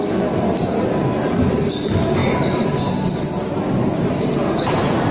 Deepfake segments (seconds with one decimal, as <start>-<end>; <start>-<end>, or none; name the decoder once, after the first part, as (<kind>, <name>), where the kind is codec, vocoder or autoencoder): 2.2-4.2 (vocoder, BigVGAN v2)